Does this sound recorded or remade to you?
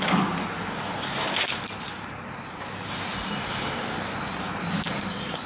recorded